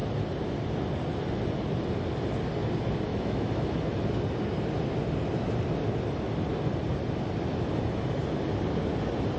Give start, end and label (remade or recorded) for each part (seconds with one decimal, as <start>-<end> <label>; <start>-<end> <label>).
0.0-3.1 recorded; 3.1-3.8 remade; 3.8-9.4 recorded